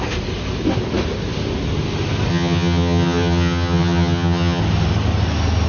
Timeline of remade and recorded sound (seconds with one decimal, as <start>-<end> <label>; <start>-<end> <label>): 0.0-2.3 recorded; 2.3-4.6 remade; 4.6-5.7 recorded